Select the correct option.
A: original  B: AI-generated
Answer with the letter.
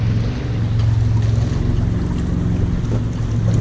A